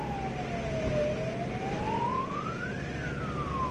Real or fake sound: real